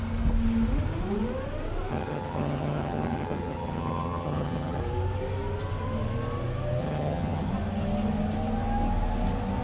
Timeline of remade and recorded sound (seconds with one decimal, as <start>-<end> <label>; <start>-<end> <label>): 0.0-1.9 recorded; 1.9-4.8 remade; 4.8-6.8 recorded; 6.8-7.5 remade; 7.5-9.6 recorded